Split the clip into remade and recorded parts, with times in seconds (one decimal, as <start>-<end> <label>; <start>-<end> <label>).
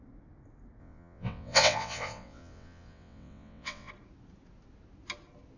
0.0-0.8 recorded; 0.8-3.9 remade; 3.9-5.6 recorded